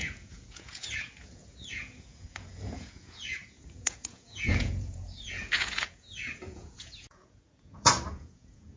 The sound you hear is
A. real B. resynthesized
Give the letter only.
B